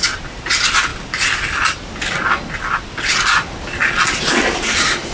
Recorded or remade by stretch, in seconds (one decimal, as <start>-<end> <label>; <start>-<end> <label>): 0.0-5.1 recorded